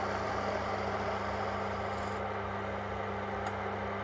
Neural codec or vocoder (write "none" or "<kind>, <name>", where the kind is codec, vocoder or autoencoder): none